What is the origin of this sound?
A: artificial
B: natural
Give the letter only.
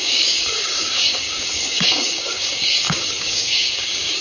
A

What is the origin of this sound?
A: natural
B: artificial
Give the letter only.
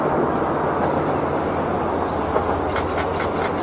A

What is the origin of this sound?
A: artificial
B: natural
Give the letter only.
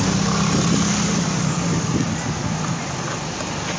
B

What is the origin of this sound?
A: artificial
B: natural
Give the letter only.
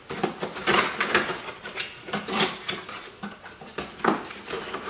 B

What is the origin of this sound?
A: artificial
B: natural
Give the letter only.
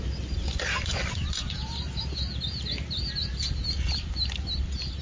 B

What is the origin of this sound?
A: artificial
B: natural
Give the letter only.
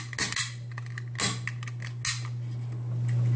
B